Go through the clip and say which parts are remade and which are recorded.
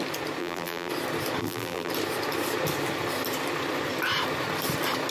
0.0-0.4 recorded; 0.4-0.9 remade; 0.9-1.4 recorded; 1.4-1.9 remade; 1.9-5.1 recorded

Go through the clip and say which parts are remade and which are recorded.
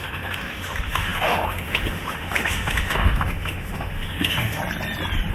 0.0-4.6 remade; 4.6-5.3 recorded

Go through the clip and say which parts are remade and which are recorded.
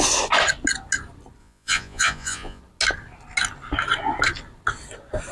0.0-1.4 recorded; 1.4-2.6 remade; 2.6-5.3 recorded